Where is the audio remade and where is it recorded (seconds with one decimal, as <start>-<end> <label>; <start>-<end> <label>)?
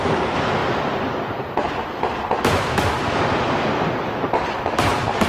0.0-5.3 recorded